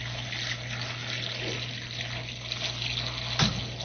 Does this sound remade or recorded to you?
recorded